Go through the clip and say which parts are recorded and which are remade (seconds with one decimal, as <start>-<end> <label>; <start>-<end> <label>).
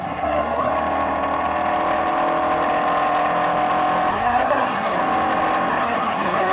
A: 0.0-0.7 remade; 0.7-4.1 recorded; 4.1-5.0 remade; 5.0-5.7 recorded; 5.7-6.5 remade